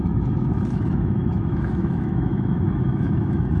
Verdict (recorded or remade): remade